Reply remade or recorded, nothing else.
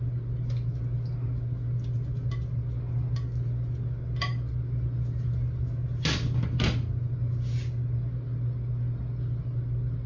recorded